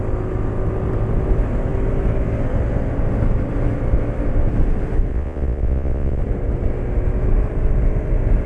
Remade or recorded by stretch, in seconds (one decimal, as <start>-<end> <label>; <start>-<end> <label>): 0.0-5.1 recorded; 5.1-6.2 remade; 6.2-8.5 recorded